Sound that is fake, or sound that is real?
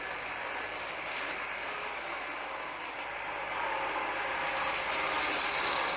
real